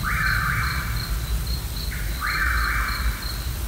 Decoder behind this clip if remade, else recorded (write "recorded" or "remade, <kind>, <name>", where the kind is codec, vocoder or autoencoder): recorded